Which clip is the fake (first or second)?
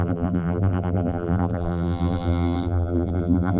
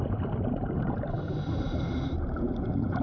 first